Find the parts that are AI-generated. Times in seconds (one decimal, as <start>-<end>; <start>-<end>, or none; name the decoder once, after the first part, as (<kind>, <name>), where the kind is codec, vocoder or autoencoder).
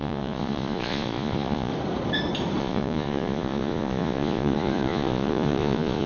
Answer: 0.0-1.7 (vocoder, Vocos); 2.6-6.1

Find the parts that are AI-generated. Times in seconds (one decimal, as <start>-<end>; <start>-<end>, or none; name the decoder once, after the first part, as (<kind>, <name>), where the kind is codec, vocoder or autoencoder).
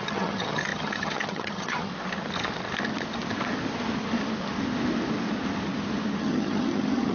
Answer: 0.0-1.9 (vocoder, HiFi-GAN); 6.2-7.1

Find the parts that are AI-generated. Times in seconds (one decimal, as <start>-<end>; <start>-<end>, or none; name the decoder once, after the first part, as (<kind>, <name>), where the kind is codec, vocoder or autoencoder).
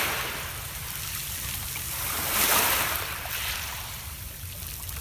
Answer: none